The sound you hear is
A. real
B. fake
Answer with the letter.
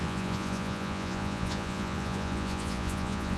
B